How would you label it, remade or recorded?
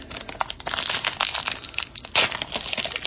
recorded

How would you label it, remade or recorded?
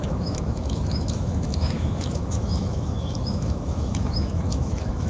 remade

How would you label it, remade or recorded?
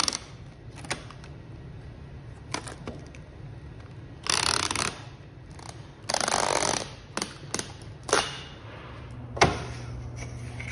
recorded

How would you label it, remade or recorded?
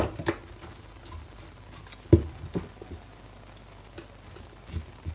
recorded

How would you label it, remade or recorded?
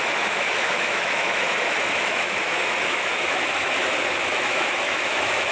remade